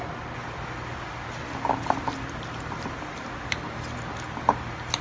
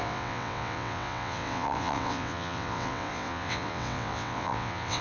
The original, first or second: first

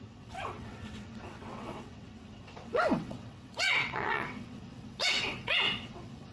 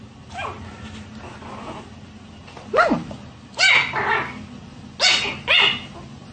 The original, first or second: second